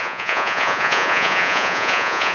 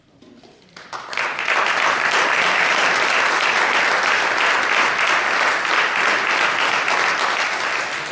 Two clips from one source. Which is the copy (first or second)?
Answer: first